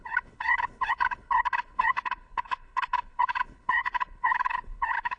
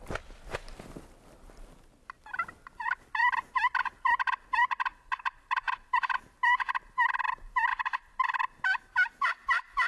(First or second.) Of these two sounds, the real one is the second